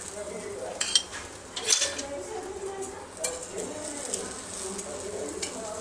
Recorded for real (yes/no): yes